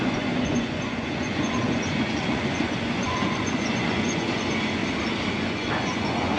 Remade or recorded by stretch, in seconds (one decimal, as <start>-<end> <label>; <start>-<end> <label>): 0.0-4.8 remade; 4.8-5.3 recorded; 5.3-6.4 remade